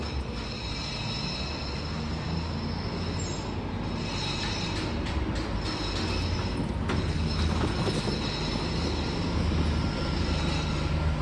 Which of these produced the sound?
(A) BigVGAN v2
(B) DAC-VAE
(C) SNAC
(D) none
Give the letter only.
D